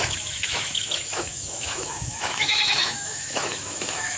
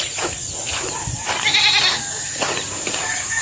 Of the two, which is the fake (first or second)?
first